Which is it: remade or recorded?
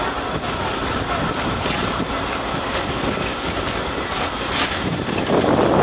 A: recorded